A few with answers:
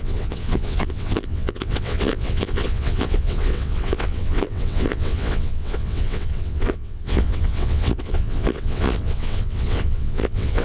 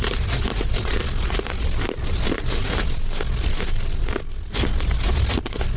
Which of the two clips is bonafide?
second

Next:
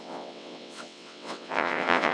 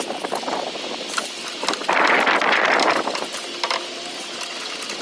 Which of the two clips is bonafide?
second